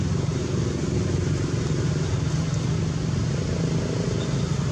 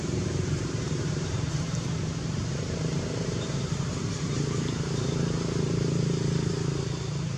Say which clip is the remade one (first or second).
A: second